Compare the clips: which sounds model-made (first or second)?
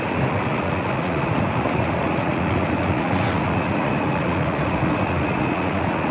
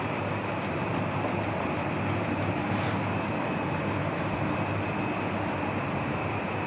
first